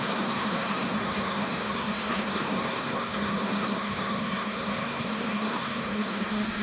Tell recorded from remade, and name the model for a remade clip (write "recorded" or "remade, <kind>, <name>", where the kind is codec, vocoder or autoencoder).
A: remade, codec, SNAC